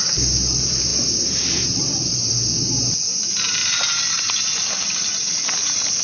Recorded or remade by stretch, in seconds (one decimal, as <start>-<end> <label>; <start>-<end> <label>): 0.0-3.6 remade; 3.6-4.1 recorded; 4.1-5.1 remade; 5.1-6.0 recorded